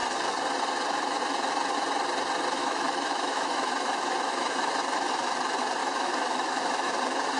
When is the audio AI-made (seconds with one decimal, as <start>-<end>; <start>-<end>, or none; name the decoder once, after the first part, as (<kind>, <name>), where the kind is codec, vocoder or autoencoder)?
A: 2.6-4.7 (autoencoder, DAC-VAE); 5.8-6.9